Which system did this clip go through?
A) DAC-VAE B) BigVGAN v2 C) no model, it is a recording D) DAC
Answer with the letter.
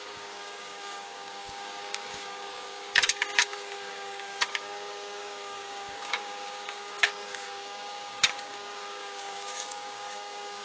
D